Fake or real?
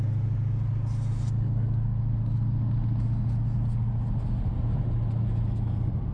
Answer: real